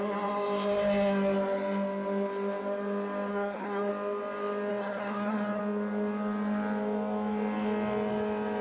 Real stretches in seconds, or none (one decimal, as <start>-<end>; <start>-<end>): 0.0-3.3; 3.9-4.7; 5.6-8.6